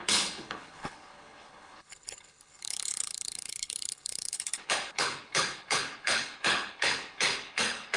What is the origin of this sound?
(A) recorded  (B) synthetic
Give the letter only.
B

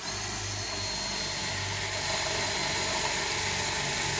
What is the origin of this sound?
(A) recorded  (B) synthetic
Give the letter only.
A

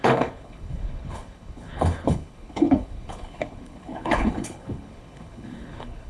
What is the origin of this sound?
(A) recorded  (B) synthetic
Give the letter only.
B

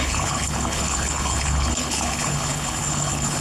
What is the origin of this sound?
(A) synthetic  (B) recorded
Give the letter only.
A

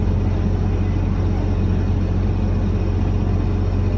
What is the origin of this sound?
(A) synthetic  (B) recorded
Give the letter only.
B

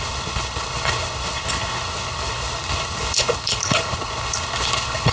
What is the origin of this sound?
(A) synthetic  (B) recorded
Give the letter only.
A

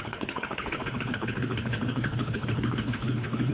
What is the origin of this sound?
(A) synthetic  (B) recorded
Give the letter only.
A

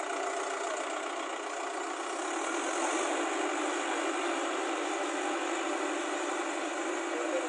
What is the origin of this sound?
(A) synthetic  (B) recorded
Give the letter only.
B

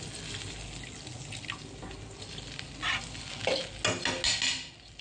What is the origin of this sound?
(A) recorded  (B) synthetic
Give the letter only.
A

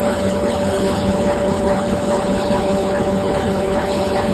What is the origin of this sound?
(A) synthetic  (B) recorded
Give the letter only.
A